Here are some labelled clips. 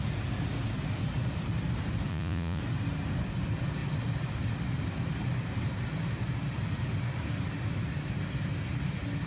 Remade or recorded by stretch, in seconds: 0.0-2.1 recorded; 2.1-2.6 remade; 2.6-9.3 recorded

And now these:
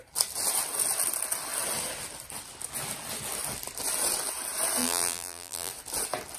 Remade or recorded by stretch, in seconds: 0.0-4.8 recorded; 4.8-5.7 remade; 5.7-6.4 recorded

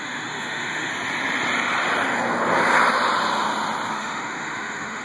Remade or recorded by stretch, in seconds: 0.0-0.9 remade; 0.9-3.9 recorded; 3.9-5.0 remade

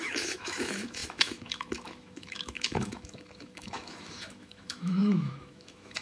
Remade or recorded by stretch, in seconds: 0.0-6.0 remade